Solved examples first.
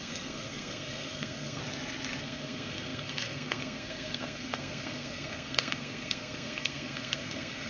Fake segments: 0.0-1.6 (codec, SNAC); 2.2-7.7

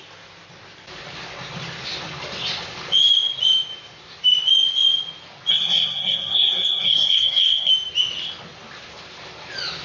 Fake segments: 5.5-7.7 (codec, SNAC)

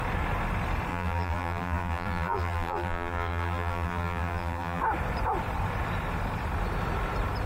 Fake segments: 0.9-4.8 (vocoder, BigVGAN v2)

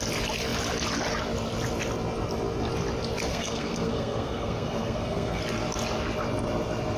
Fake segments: 3.3-5.4 (codec, SNAC)

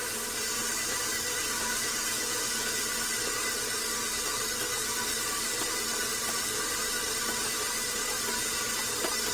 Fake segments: 1.6-2.8 (vocoder, Vocos)